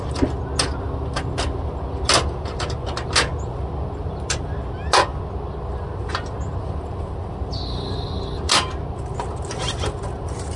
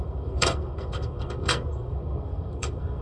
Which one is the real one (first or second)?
first